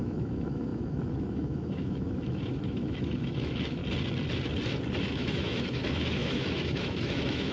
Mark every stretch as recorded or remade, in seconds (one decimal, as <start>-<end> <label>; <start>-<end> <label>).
0.0-3.8 remade; 3.8-5.0 recorded; 5.0-7.5 remade